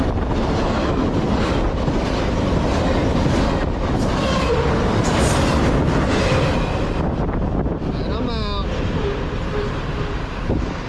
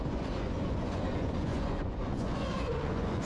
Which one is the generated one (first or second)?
second